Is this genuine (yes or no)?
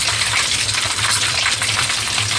no